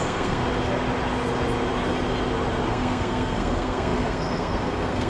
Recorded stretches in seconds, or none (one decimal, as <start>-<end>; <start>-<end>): 0.4-2.7